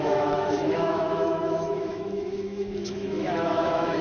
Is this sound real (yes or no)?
no